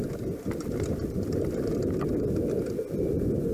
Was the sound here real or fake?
real